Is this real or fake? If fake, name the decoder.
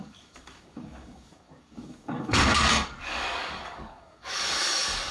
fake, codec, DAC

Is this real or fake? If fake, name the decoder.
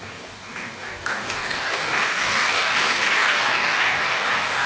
fake, codec, DAC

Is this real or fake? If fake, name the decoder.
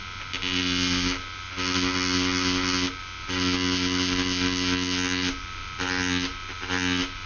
real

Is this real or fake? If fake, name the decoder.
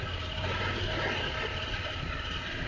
real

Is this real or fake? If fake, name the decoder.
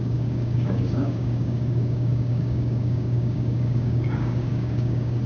fake, codec, DAC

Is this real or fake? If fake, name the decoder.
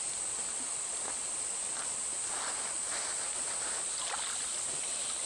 real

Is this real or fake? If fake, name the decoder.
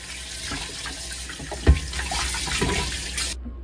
real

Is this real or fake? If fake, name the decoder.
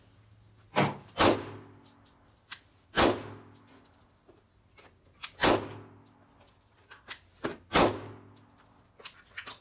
real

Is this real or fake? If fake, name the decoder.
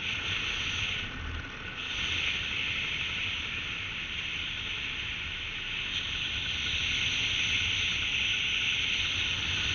real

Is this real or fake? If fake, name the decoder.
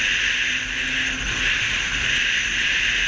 real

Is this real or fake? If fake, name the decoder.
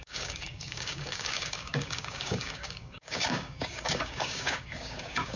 fake, codec, DAC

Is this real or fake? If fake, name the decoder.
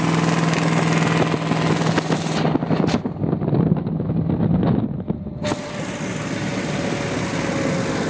real